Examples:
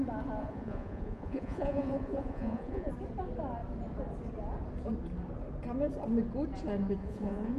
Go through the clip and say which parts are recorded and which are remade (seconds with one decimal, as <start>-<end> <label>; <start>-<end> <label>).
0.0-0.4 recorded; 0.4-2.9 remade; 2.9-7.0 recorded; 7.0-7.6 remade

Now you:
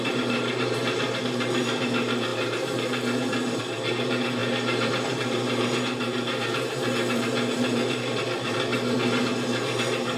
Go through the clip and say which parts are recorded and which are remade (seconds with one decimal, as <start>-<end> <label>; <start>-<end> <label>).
0.0-10.2 remade

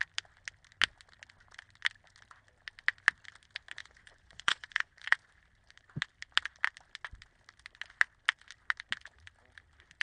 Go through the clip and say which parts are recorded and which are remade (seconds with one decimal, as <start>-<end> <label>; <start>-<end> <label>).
0.0-3.8 recorded; 3.8-5.3 remade; 5.3-10.0 recorded